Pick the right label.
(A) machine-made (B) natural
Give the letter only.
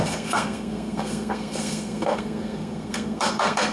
A